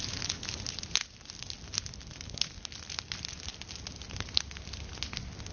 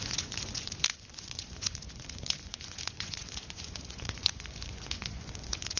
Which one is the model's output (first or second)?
second